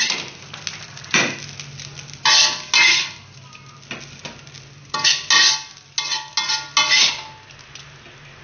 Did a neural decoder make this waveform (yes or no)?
no